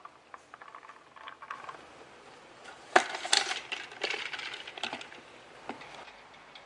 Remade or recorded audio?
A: remade